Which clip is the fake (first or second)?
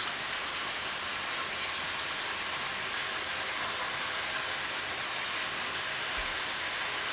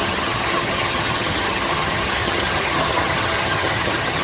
second